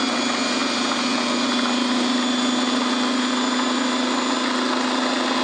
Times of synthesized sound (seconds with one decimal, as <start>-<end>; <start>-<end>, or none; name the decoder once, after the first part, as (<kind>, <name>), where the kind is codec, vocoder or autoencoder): none